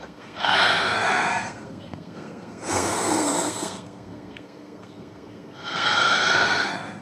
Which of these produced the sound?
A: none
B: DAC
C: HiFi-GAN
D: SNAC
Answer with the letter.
D